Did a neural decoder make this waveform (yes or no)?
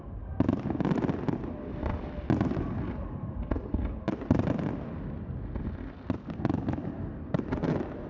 no